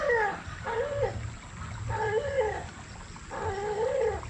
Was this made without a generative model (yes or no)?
yes